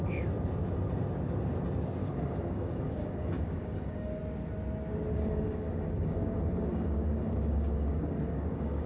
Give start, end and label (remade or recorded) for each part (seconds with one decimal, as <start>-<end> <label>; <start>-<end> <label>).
0.0-2.0 recorded; 2.0-4.2 remade; 4.2-5.1 recorded; 5.1-8.9 remade